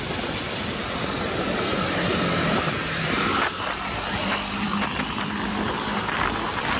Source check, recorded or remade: recorded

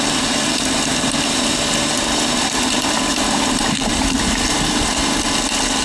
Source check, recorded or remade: remade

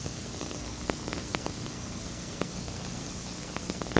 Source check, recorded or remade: remade